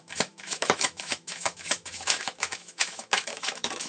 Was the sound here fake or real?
fake